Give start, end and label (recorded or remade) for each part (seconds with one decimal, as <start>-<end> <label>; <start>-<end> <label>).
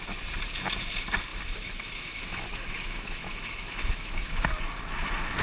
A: 0.0-1.3 recorded; 1.3-4.5 remade; 4.5-5.4 recorded